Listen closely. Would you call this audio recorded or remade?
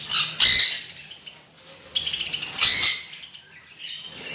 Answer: recorded